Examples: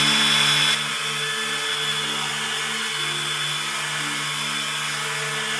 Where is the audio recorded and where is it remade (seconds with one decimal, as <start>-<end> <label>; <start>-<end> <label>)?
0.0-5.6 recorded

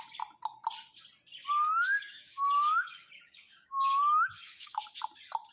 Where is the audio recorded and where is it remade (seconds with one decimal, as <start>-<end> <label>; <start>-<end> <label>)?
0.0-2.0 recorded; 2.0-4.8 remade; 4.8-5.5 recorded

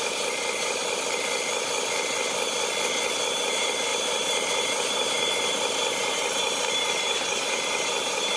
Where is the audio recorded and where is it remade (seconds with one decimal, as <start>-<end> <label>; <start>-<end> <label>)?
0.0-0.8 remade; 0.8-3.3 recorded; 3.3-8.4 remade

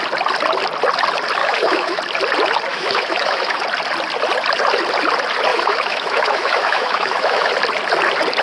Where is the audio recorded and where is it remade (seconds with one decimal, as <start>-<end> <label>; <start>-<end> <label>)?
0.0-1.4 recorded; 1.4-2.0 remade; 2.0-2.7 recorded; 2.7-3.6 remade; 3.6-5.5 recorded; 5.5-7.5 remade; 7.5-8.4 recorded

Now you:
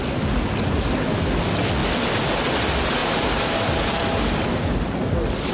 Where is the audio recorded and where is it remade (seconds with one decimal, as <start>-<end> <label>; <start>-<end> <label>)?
0.0-3.0 recorded; 3.0-4.0 remade; 4.0-5.5 recorded

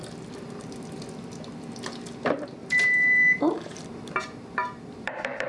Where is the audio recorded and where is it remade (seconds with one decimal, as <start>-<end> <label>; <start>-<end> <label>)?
0.0-2.6 recorded; 2.6-5.5 remade

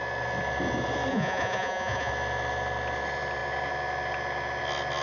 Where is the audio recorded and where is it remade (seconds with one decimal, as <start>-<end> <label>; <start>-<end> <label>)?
0.0-1.1 recorded; 1.1-2.1 remade; 2.1-5.0 recorded